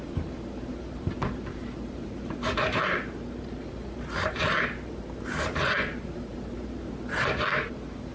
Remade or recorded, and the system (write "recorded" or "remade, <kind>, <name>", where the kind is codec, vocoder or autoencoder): remade, vocoder, BigVGAN v2